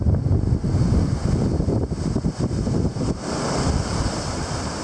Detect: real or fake real